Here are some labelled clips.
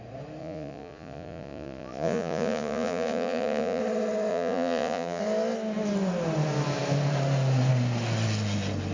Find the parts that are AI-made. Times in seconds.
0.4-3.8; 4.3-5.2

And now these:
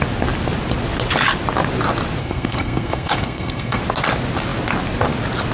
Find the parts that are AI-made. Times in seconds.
2.2-3.8

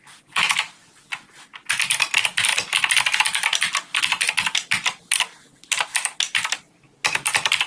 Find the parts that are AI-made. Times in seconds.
none